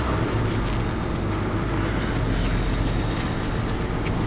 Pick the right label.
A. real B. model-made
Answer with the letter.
A